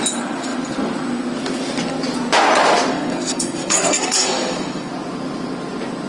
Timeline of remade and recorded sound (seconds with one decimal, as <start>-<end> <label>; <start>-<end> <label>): 0.0-2.9 recorded; 2.9-4.9 remade; 4.9-6.1 recorded